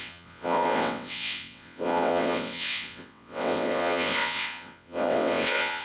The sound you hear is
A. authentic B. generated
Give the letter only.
B